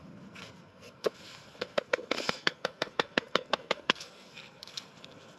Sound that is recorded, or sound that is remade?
remade